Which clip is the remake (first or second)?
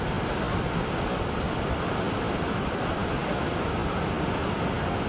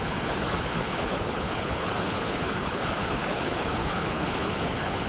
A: second